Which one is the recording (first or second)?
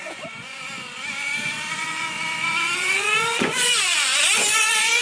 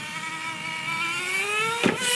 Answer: second